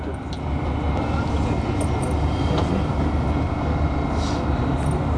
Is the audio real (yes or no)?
yes